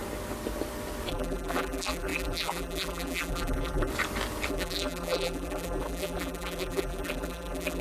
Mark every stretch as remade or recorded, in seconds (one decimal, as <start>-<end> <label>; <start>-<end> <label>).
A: 0.0-1.1 recorded; 1.1-3.9 remade; 3.9-4.5 recorded; 4.5-7.8 remade